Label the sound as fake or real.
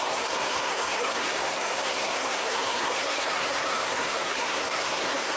fake